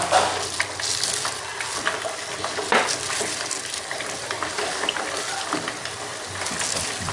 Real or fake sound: real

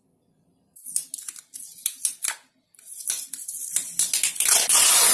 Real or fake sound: real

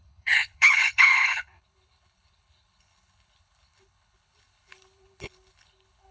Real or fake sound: fake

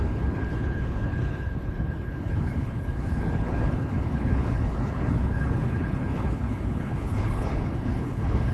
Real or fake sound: fake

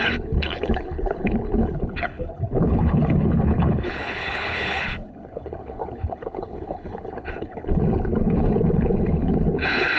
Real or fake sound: fake